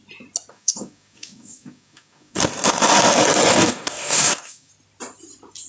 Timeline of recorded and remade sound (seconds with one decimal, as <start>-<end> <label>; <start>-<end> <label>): 0.0-0.5 recorded; 0.5-2.4 remade; 2.4-3.5 recorded; 3.5-4.7 remade; 4.7-5.7 recorded